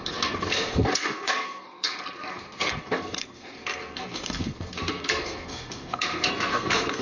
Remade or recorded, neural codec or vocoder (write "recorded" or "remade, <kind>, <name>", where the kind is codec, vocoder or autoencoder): remade, codec, SNAC